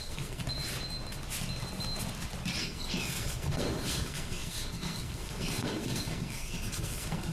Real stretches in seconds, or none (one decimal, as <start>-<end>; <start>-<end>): 0.4-2.6